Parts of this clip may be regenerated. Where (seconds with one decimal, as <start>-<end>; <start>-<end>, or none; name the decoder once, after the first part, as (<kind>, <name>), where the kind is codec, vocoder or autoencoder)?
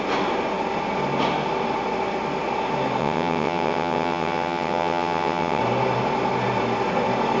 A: 3.0-5.6 (vocoder, WaveNeXt)